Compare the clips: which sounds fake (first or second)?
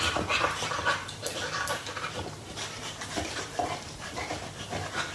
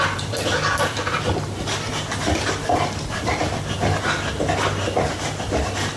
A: first